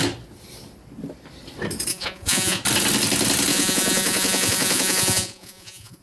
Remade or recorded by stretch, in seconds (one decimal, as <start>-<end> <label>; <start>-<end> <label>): 0.0-1.9 recorded; 1.9-2.6 remade; 2.6-3.5 recorded; 3.5-6.0 remade